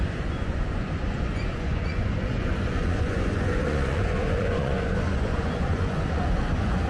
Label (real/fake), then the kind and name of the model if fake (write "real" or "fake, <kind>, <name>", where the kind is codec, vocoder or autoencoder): fake, vocoder, Vocos